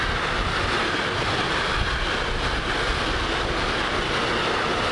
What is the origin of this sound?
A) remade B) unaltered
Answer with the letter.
B